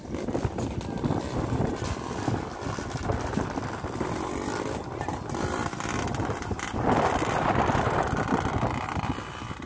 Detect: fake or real real